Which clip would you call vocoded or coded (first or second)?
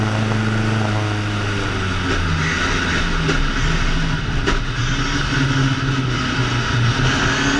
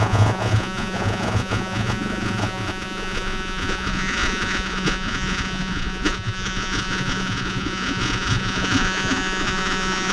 second